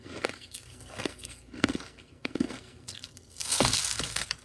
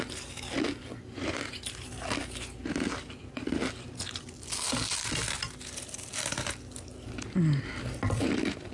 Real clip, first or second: second